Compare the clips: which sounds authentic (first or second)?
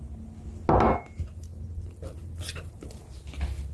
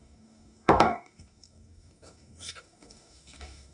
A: first